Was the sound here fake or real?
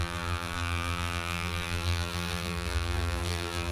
fake